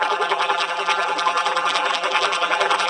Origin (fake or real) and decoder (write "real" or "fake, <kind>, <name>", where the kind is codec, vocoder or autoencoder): fake, vocoder, BigVGAN v2